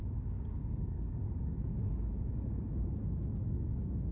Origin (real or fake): fake